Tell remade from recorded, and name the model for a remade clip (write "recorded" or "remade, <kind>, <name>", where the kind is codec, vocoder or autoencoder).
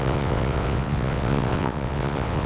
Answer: remade, vocoder, WaveNeXt